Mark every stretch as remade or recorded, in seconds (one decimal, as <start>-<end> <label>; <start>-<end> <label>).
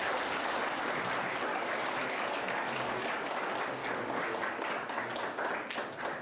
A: 0.0-1.5 recorded; 1.5-3.4 remade; 3.4-3.8 recorded; 3.8-5.0 remade; 5.0-6.2 recorded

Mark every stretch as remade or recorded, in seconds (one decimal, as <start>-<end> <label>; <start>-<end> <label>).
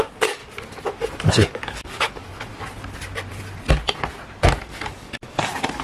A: 0.0-0.4 remade; 0.4-1.2 recorded; 1.2-2.2 remade; 2.2-4.6 recorded; 4.6-5.8 remade